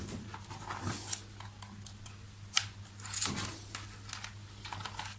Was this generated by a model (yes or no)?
no